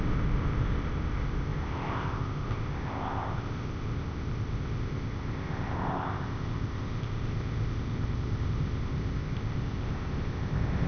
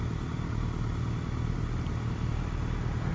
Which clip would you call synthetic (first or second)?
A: first